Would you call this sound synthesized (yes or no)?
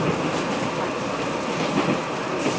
no